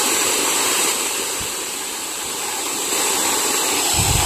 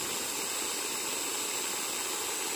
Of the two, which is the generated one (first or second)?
first